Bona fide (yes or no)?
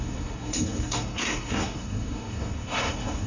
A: no